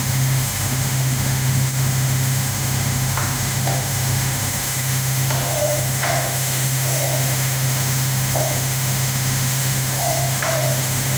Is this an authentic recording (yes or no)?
no